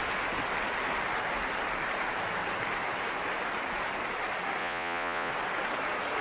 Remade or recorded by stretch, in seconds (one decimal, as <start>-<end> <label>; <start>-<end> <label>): 0.0-4.6 recorded; 4.6-5.3 remade; 5.3-6.2 recorded